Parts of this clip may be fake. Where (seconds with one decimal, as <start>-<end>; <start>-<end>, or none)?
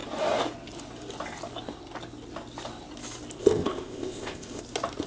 3.4-4.6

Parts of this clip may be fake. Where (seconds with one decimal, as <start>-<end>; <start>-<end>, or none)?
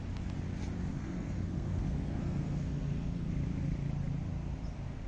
0.9-3.3